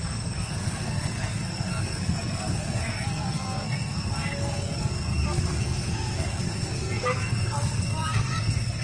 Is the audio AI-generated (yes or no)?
yes